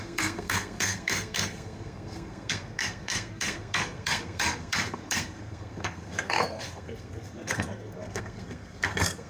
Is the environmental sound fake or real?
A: fake